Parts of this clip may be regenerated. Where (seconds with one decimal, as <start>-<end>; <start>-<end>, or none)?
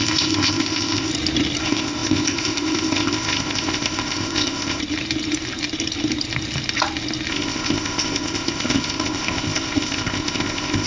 0.0-1.1; 1.6-4.8; 7.3-10.9